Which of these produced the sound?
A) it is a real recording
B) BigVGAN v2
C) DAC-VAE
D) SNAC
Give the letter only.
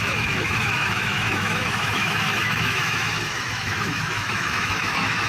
C